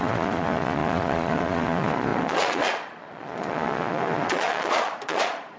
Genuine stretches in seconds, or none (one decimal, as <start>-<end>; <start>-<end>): none